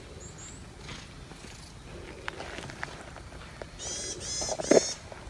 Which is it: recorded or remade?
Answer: recorded